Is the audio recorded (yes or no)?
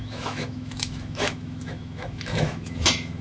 no